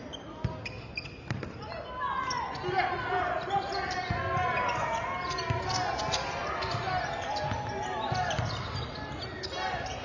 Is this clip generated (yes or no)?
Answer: no